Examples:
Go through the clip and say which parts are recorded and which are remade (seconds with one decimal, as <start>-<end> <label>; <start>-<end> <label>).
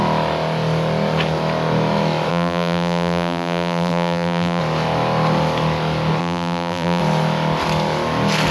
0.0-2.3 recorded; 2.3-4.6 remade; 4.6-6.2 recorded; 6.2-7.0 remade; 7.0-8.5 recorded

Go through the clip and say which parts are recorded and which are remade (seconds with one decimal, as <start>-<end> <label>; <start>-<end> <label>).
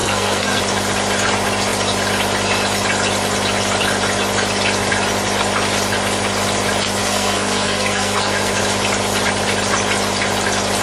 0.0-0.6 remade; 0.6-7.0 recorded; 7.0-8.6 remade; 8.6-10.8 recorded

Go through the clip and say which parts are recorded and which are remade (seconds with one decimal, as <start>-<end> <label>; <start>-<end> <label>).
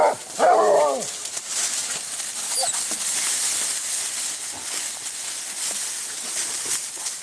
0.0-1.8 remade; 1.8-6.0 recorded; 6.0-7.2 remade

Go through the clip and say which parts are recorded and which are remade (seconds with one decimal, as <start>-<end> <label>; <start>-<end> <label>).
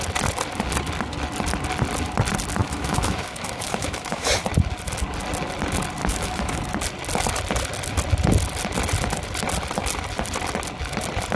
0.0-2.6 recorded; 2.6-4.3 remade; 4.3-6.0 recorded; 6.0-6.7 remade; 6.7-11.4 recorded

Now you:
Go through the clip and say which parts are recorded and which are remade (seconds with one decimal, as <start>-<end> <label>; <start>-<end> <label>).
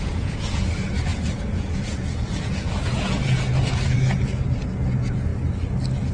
0.0-5.3 remade; 5.3-6.1 recorded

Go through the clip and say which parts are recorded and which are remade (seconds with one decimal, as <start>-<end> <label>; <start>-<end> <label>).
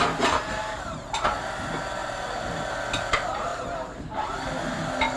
0.0-0.6 recorded; 0.6-1.5 remade; 1.5-2.0 recorded; 2.0-2.6 remade; 2.6-3.5 recorded; 3.5-4.4 remade; 4.4-5.2 recorded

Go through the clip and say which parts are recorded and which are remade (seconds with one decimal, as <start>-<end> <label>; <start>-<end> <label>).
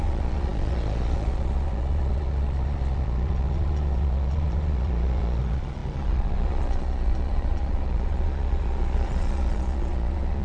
0.0-10.4 remade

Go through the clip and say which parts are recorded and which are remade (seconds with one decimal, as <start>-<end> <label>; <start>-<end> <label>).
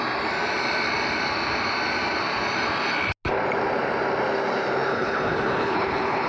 0.0-4.9 recorded; 4.9-6.3 remade